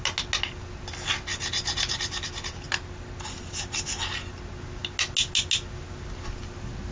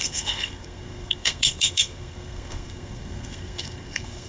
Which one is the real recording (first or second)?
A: first